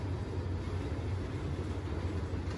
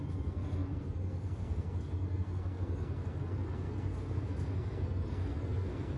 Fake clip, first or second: second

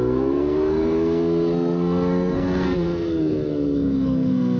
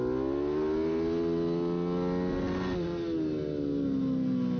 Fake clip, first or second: first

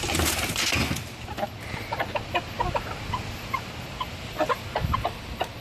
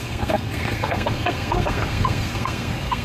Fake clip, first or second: second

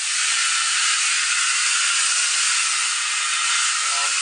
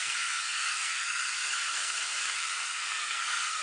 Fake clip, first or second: second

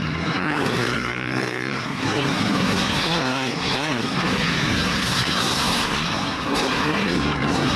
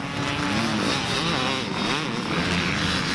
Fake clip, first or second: first